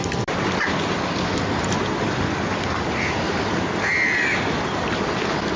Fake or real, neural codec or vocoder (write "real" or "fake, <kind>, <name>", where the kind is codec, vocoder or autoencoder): real